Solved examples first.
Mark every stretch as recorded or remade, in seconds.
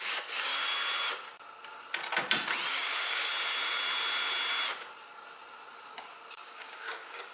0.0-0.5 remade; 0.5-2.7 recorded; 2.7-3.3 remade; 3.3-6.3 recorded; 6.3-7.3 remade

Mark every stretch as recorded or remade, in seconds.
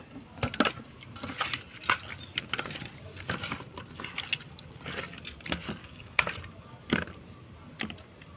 0.0-5.8 recorded; 5.8-6.3 remade; 6.3-8.4 recorded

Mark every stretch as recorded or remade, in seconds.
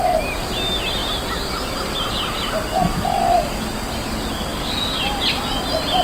0.0-4.5 recorded; 4.5-5.0 remade; 5.0-6.0 recorded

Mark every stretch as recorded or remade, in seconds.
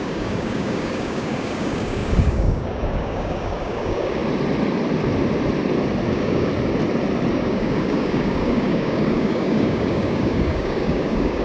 0.0-4.2 remade; 4.2-6.1 recorded; 6.1-6.5 remade; 6.5-7.3 recorded; 7.3-11.4 remade